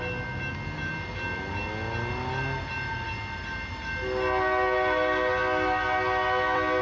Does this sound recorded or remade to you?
recorded